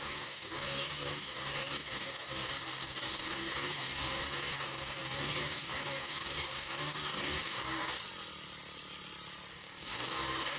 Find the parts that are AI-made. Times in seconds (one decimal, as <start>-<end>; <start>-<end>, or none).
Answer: 0.0-8.0; 9.5-10.6